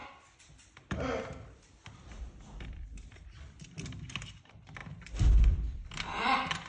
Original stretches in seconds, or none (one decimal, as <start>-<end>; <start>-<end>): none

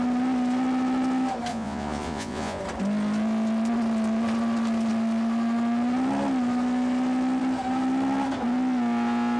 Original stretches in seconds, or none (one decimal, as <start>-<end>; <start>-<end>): 0.0-1.5; 2.6-9.4

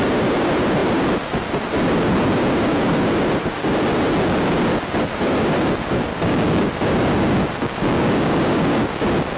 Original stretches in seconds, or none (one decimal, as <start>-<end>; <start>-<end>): 0.0-6.1; 6.7-7.6; 8.6-9.4

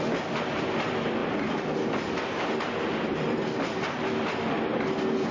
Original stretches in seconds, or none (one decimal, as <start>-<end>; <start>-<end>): 0.0-5.3

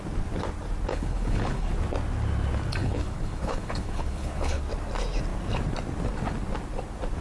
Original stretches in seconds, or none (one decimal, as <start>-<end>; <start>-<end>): 0.0-0.9; 1.7-2.8; 4.6-7.2

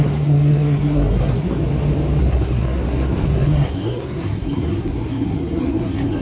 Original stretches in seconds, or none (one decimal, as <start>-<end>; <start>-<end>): 1.6-2.2